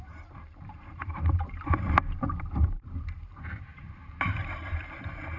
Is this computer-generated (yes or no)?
yes